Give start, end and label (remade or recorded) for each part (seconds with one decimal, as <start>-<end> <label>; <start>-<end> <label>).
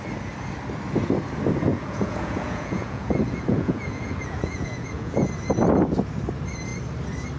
0.0-1.7 recorded; 1.7-5.3 remade; 5.3-7.4 recorded